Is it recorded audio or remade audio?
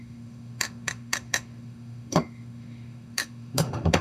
remade